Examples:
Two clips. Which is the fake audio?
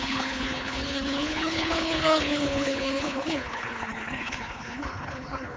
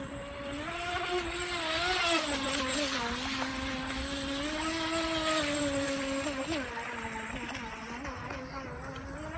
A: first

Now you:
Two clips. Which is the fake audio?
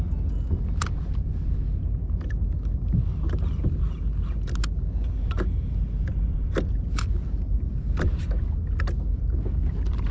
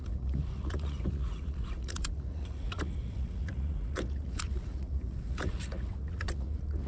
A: second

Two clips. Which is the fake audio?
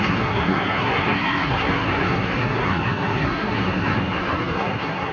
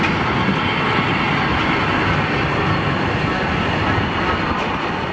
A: first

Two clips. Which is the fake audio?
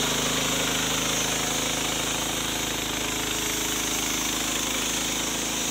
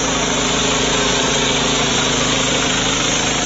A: second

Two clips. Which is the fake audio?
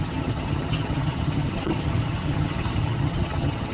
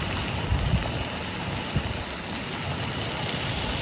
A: first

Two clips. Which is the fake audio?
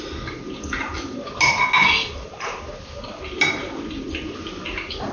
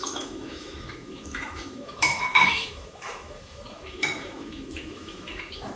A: second